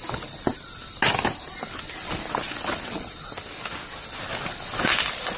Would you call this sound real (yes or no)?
yes